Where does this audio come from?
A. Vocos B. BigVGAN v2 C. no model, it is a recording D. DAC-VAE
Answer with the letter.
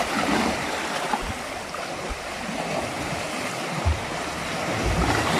C